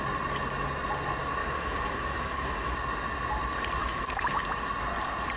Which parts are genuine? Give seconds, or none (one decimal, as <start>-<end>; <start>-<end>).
0.0-1.4; 2.7-3.8; 4.4-5.4